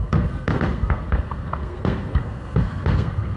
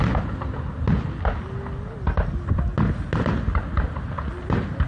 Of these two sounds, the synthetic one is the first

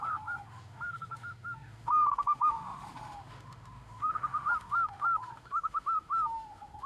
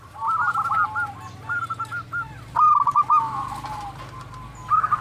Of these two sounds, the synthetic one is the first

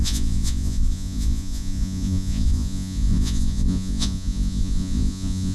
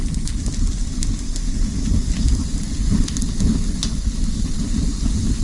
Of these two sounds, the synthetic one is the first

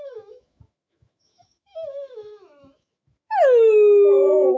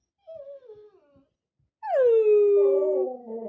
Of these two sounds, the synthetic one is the first